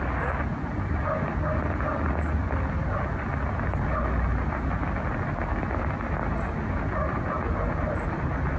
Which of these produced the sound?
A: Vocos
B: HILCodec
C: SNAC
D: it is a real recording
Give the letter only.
D